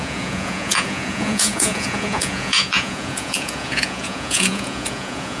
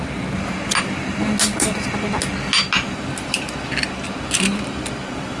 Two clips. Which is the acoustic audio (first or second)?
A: second